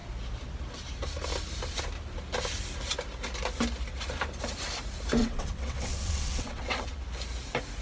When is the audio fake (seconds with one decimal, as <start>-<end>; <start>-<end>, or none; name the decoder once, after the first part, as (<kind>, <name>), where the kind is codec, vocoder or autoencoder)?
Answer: 5.2-7.0 (vocoder, WaveNeXt)